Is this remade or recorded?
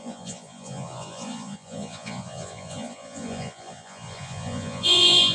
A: remade